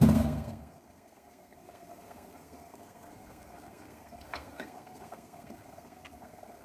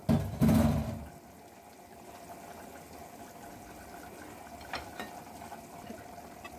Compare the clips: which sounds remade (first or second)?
first